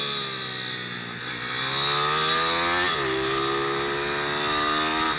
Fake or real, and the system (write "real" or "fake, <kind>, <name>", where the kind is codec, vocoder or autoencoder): real